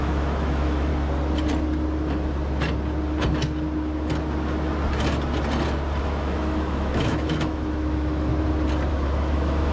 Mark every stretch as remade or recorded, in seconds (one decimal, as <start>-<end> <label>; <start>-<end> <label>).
0.0-0.9 remade; 0.9-6.0 recorded; 6.0-8.3 remade; 8.3-8.9 recorded; 8.9-9.7 remade